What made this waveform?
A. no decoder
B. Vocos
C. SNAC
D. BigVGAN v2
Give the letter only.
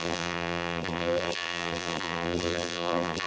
D